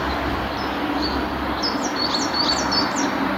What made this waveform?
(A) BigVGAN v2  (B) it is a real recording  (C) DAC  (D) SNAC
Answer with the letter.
B